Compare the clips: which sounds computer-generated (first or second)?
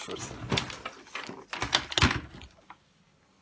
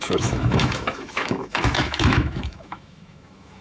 second